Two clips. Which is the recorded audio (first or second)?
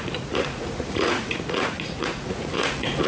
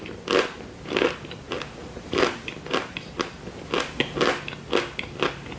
second